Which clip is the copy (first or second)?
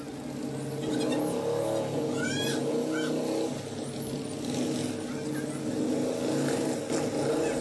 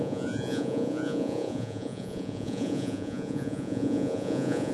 second